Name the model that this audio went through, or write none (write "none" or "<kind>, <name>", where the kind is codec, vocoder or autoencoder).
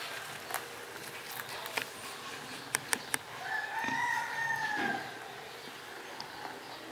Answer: none